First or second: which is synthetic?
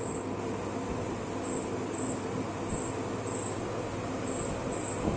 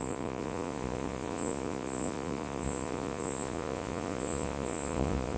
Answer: second